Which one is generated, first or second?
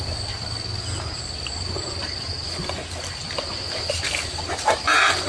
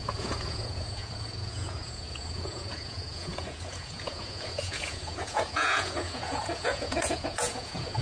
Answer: second